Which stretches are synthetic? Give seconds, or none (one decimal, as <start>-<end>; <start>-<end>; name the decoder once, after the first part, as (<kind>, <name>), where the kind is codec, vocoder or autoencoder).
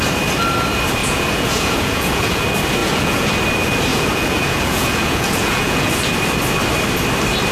1.0-2.4 (vocoder, Vocos); 2.8-3.3; 3.9-5.9